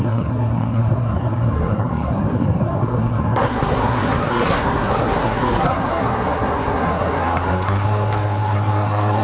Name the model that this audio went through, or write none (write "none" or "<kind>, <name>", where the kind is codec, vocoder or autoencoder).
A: codec, SNAC